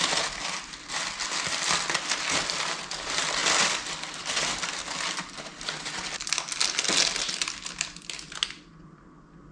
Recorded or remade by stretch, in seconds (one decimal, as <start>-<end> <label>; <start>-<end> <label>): 0.0-9.5 recorded